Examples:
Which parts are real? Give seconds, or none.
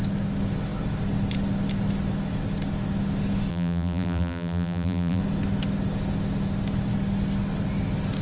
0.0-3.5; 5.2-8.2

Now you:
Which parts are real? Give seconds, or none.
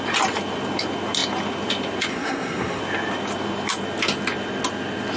0.0-2.1; 2.8-5.2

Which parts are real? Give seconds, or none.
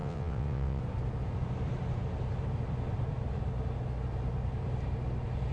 0.8-5.5